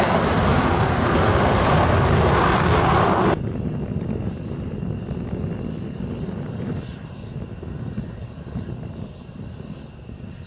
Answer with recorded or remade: recorded